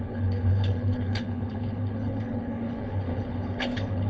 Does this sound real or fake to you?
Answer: fake